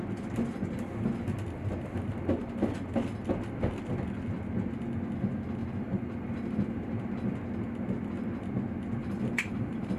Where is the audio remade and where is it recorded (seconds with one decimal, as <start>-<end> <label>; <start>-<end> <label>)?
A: 0.0-5.6 recorded; 5.6-7.4 remade; 7.4-9.0 recorded; 9.0-10.0 remade